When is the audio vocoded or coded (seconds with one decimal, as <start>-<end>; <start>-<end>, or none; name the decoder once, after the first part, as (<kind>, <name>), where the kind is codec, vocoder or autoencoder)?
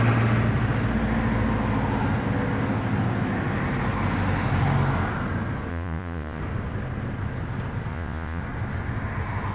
5.7-6.4 (vocoder, Vocos); 7.9-8.4